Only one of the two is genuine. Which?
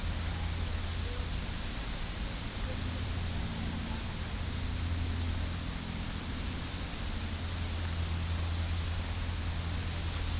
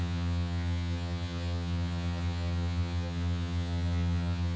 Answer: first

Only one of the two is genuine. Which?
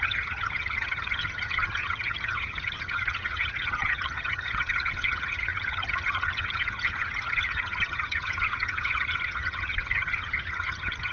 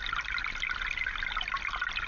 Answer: second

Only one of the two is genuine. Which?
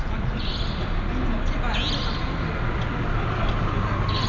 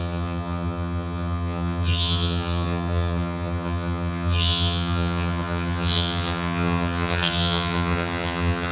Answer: first